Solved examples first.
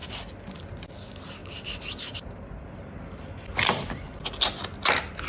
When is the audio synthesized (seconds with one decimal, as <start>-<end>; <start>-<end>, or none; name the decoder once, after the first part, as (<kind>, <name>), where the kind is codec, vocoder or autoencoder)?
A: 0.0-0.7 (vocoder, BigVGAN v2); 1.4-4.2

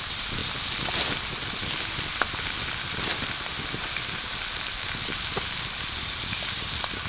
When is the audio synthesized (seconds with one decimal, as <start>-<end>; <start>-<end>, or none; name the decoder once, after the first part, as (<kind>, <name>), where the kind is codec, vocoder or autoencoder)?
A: none

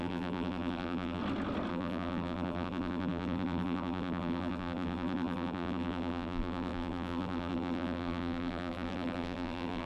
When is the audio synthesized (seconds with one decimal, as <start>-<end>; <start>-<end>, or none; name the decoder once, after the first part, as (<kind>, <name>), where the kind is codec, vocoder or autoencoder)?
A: 0.0-1.2 (vocoder, BigVGAN v2); 1.7-9.9